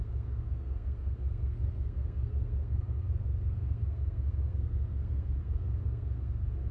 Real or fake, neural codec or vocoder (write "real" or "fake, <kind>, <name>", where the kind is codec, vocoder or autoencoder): fake, codec, SNAC